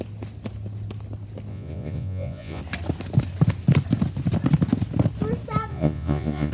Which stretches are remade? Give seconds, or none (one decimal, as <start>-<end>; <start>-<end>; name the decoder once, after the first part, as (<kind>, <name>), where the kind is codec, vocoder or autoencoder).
1.5-2.6 (vocoder, Vocos); 5.7-6.5